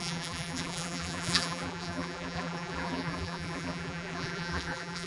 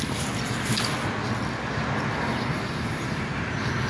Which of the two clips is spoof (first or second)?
first